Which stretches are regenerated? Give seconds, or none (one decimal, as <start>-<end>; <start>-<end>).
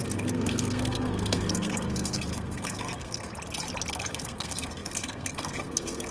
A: 0.0-3.3; 3.9-6.1